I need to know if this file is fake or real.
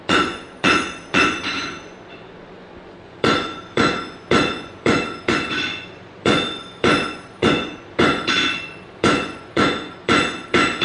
fake